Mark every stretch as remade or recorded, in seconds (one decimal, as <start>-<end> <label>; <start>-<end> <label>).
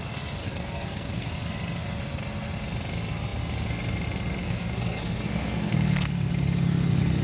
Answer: 0.0-0.4 recorded; 0.4-1.3 remade; 1.3-4.4 recorded; 4.4-6.3 remade; 6.3-7.2 recorded